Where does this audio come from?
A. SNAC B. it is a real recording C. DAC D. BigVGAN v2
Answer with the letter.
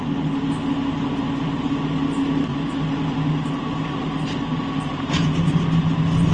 B